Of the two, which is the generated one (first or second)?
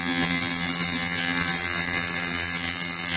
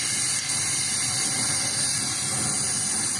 first